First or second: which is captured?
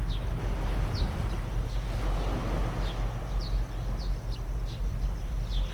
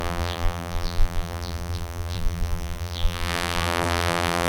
first